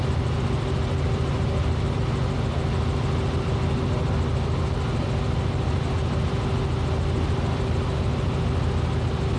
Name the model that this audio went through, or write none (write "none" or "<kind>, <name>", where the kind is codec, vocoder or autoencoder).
none